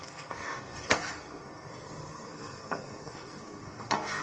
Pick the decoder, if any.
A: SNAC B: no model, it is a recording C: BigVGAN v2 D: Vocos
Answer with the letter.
A